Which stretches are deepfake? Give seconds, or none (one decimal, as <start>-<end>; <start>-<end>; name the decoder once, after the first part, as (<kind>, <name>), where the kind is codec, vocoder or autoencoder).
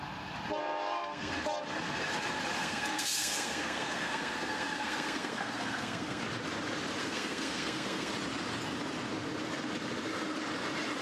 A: 0.6-1.4 (codec, SNAC); 2.6-6.2; 7.0-8.1